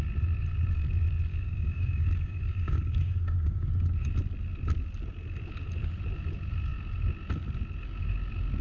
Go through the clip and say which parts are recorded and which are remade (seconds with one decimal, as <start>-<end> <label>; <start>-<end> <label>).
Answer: 0.0-1.3 recorded; 1.3-3.7 remade; 3.7-8.6 recorded